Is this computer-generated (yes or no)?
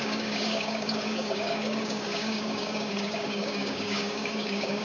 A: yes